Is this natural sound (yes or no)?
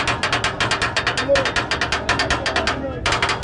yes